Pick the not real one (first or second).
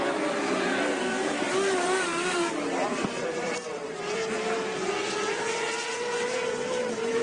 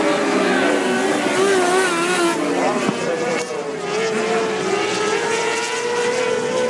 first